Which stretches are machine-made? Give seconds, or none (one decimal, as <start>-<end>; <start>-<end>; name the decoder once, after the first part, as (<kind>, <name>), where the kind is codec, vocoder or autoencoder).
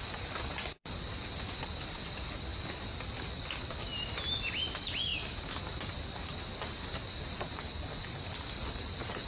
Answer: none